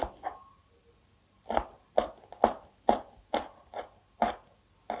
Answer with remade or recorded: recorded